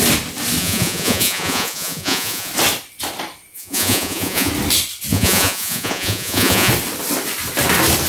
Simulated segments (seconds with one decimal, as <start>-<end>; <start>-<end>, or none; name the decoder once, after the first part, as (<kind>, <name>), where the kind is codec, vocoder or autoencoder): 0.6-2.5 (vocoder, Vocos); 3.5-4.5; 5.1-6.7